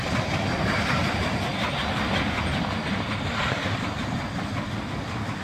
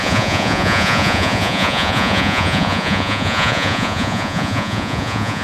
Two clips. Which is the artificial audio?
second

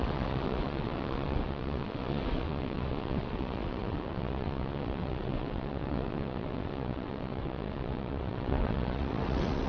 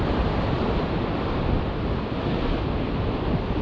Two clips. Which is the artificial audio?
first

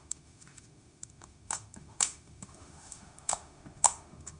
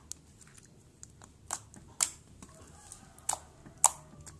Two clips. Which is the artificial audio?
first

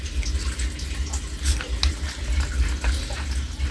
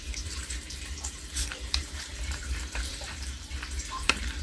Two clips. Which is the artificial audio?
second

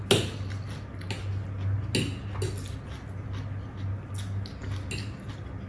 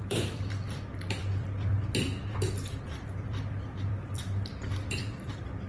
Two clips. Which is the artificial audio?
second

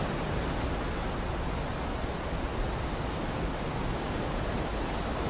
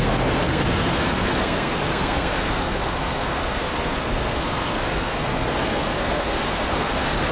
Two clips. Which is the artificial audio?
second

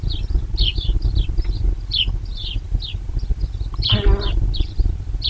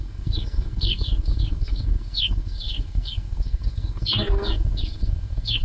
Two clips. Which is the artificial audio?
second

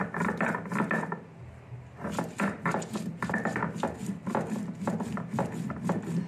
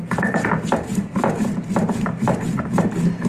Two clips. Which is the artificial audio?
second